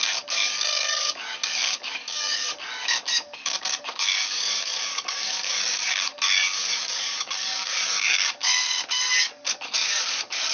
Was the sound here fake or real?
fake